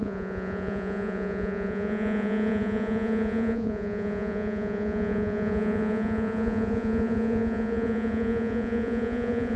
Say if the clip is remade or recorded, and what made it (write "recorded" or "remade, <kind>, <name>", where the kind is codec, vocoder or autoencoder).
remade, vocoder, Vocos